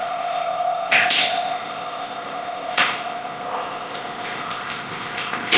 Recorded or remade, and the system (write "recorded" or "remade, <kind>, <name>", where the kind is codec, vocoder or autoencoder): remade, codec, ZipCodec